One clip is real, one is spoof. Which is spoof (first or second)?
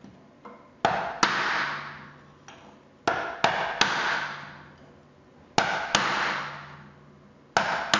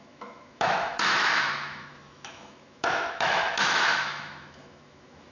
second